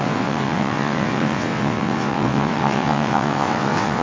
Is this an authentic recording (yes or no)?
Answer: no